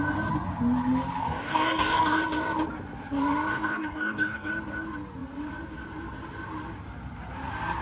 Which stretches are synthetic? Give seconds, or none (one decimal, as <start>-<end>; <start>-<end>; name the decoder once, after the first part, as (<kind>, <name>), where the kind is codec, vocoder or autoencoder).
1.2-2.2 (codec, DAC); 3.5-4.5